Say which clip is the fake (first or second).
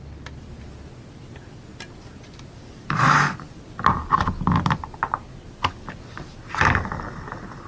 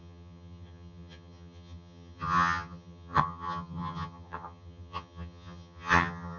second